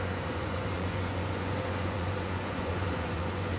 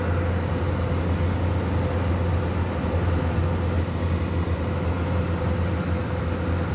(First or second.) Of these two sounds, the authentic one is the second